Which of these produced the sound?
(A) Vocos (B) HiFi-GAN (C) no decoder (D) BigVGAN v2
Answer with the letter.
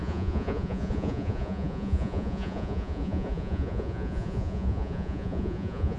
A